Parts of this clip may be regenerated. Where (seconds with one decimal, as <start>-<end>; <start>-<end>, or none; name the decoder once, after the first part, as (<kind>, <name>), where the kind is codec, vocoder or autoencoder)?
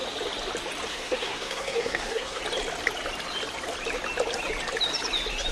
0.9-2.4 (codec, SNAC)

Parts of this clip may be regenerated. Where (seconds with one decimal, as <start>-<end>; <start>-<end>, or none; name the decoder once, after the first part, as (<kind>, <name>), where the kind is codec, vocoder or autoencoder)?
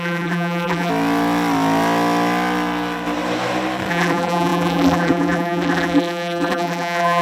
0.0-0.9 (vocoder, BigVGAN v2); 3.9-7.2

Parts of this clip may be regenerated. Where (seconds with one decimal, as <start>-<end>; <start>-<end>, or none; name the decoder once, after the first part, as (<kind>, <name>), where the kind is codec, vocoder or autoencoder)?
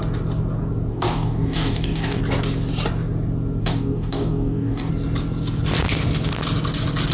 0.9-2.2 (codec, DAC); 3.6-4.9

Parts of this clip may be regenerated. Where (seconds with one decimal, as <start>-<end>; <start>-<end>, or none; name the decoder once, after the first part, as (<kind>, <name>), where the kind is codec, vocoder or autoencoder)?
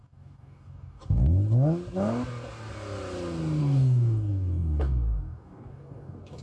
0.0-1.2 (codec, DAC); 3.6-6.4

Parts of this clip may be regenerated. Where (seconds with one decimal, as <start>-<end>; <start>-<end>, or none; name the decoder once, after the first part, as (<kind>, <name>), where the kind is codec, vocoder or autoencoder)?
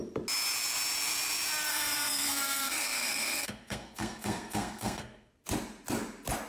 1.7-5.3 (codec, SNAC)